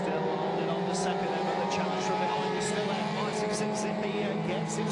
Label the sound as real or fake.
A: real